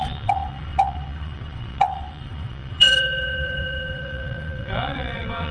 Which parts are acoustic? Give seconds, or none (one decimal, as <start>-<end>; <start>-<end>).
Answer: none